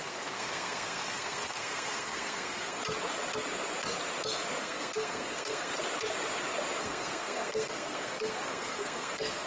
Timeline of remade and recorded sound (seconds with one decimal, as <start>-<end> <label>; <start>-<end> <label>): 0.0-2.8 remade; 2.8-4.6 recorded; 4.6-5.7 remade; 5.7-6.8 recorded; 6.8-9.5 remade